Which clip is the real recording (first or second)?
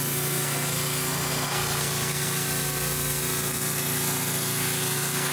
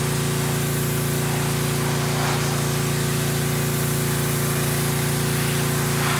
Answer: second